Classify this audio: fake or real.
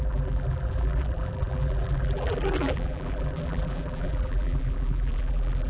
fake